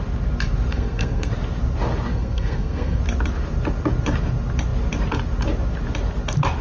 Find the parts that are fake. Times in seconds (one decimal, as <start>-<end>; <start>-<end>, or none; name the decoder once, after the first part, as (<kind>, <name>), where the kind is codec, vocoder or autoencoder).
0.7-1.3 (codec, SNAC); 2.1-3.0